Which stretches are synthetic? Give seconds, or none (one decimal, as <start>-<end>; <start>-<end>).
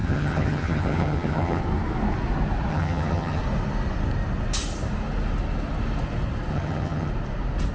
0.0-1.6; 2.7-3.4; 6.5-7.1